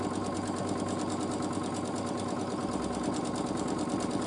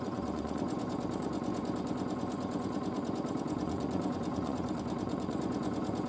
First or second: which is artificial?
second